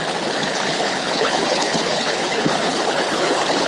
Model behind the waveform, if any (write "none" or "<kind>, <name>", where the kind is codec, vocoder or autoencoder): codec, HILCodec